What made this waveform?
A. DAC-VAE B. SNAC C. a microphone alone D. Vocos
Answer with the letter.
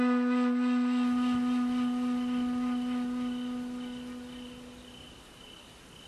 C